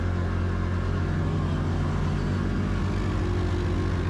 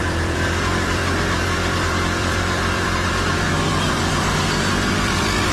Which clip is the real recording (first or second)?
first